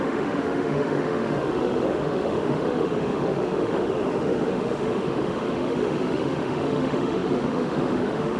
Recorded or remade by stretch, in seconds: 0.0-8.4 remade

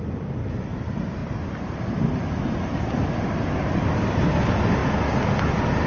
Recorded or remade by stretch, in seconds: 0.0-1.2 recorded; 1.2-1.7 remade; 1.7-3.0 recorded; 3.0-4.2 remade; 4.2-5.9 recorded

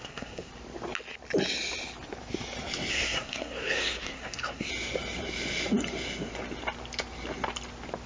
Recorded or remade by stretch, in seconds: 0.0-0.5 remade; 0.5-2.9 recorded; 2.9-4.7 remade; 4.7-8.1 recorded

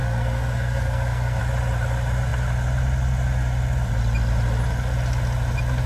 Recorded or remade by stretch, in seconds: 0.0-1.4 remade; 1.4-5.9 recorded

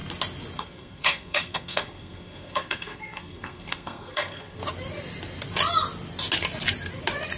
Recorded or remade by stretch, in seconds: 0.0-0.6 recorded; 0.6-4.6 remade; 4.6-7.4 recorded